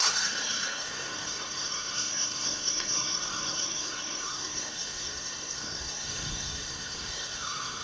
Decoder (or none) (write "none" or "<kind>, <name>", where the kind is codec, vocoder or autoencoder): codec, SNAC